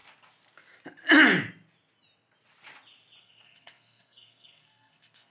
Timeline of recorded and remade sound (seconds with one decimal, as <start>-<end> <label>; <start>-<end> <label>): 0.0-3.2 recorded; 3.2-5.3 remade